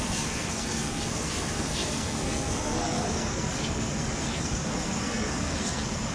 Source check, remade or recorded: remade